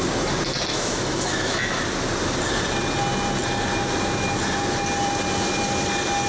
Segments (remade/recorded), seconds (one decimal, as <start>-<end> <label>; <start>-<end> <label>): 0.0-0.7 recorded; 0.7-1.8 remade; 1.8-6.3 recorded

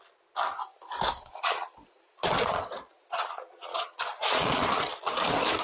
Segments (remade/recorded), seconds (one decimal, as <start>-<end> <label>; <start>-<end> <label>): 0.0-1.2 recorded; 1.2-4.6 remade; 4.6-5.6 recorded

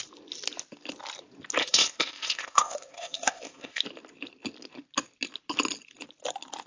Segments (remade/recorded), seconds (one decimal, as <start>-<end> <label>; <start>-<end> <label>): 0.0-1.6 recorded; 1.6-3.8 remade; 3.8-6.7 recorded

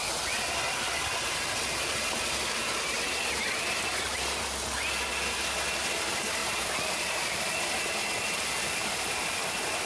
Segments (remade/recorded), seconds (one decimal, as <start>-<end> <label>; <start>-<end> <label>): 0.0-6.4 recorded; 6.4-7.4 remade; 7.4-9.9 recorded

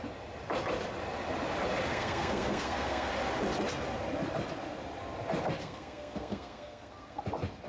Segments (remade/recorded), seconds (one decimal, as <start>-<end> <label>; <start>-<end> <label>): 0.0-1.9 recorded; 1.9-3.1 remade; 3.1-5.6 recorded; 5.6-7.2 remade; 7.2-7.7 recorded

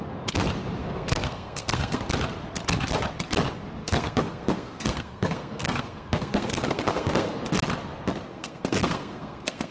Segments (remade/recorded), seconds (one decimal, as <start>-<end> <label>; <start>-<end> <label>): 0.0-0.8 recorded; 0.8-2.0 remade; 2.0-3.8 recorded; 3.8-7.4 remade; 7.4-8.3 recorded; 8.3-9.7 remade

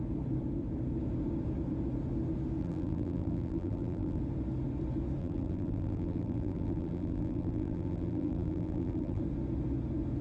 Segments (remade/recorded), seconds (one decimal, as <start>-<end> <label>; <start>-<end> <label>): 0.0-2.6 recorded; 2.6-4.2 remade; 4.2-5.2 recorded; 5.2-9.2 remade; 9.2-10.2 recorded

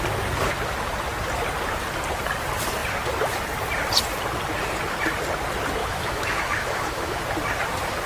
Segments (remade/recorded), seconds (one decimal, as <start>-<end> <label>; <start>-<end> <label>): 0.0-5.8 recorded; 5.8-7.2 remade; 7.2-8.1 recorded